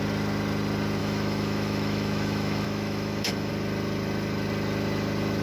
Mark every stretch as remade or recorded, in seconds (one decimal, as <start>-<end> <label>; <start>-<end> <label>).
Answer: 0.0-1.0 recorded; 1.0-3.5 remade; 3.5-5.4 recorded